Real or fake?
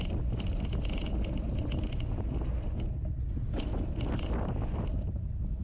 real